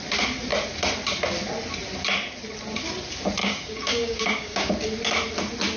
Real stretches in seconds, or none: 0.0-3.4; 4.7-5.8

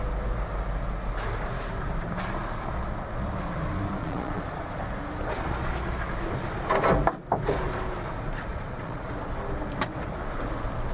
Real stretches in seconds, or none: 0.0-4.0; 4.8-8.5; 9.1-10.9